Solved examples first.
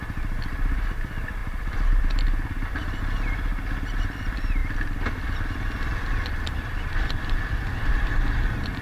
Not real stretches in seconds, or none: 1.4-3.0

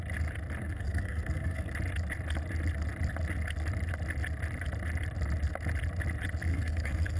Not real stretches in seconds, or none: 0.6-1.7; 6.5-7.2

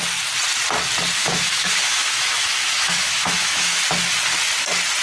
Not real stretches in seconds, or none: 1.2-3.8

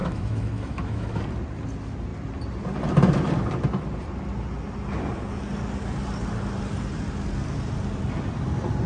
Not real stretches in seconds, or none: 0.0-1.2

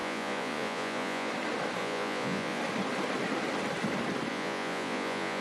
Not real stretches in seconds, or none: 0.0-1.3; 1.8-2.6; 4.3-5.4